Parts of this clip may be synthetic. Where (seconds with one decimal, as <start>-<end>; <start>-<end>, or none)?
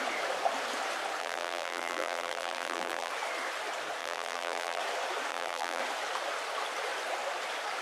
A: 1.2-3.1; 4.0-4.8; 5.3-5.8